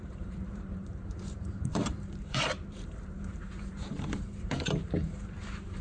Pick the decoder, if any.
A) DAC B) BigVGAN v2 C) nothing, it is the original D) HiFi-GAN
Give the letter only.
B